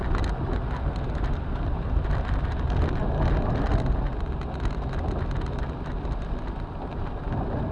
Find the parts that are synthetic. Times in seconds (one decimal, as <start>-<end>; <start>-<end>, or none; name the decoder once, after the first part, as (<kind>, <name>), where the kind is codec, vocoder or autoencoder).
none